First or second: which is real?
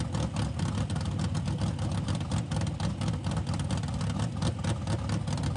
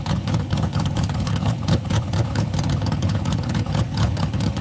first